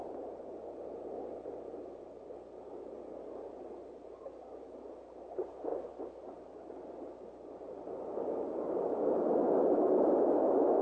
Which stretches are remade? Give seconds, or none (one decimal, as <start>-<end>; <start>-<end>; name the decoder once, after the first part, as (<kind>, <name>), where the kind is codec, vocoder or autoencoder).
none